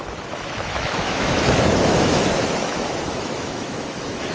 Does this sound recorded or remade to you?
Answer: remade